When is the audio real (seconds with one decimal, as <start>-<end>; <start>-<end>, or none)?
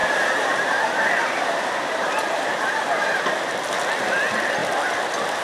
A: 3.2-5.4